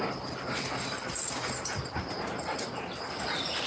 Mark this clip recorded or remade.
recorded